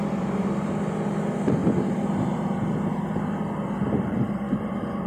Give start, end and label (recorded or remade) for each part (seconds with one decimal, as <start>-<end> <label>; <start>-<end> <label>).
0.0-5.1 recorded